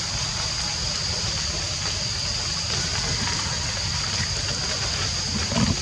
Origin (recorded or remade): recorded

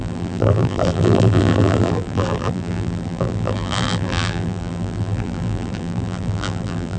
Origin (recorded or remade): remade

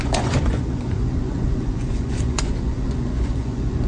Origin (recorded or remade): remade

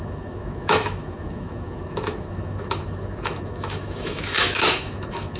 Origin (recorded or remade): remade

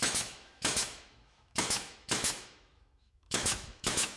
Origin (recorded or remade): remade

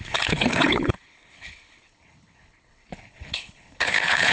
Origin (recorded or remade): remade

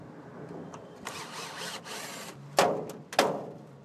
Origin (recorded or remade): recorded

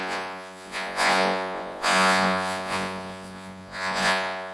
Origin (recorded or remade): remade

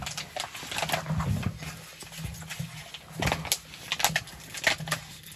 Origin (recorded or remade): recorded